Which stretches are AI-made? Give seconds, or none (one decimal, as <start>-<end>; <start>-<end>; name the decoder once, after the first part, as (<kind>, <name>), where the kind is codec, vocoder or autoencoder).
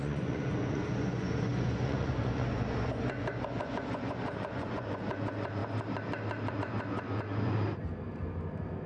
0.0-5.6 (vocoder, Vocos); 6.5-7.8